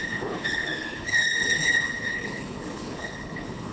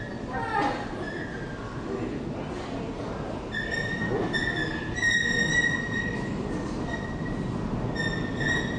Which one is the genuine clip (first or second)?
second